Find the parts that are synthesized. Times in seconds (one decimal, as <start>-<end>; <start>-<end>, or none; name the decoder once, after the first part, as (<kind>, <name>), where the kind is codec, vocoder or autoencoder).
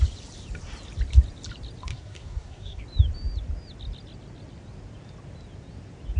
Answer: 1.9-2.8 (codec, SNAC)